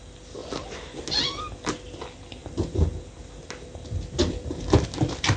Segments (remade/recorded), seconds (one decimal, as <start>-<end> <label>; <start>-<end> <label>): 0.0-5.4 recorded